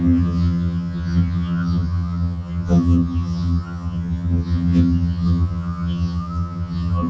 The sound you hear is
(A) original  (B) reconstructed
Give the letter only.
B